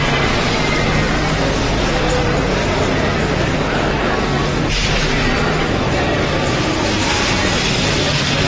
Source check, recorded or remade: recorded